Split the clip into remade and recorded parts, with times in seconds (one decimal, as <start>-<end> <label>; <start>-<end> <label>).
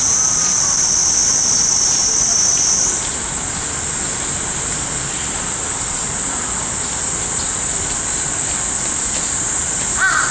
0.0-10.3 recorded